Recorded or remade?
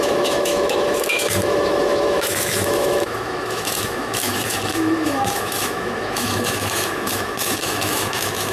remade